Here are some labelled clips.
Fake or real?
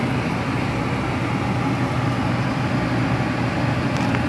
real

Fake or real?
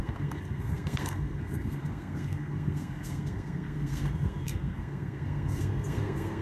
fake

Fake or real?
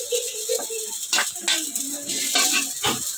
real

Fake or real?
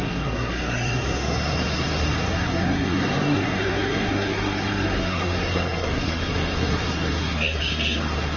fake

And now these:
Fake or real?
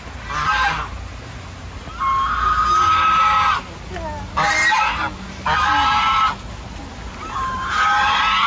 real